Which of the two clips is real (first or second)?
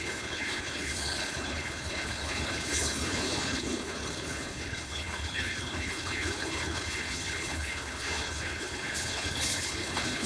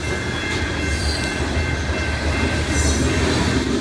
second